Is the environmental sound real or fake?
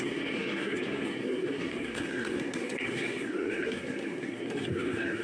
fake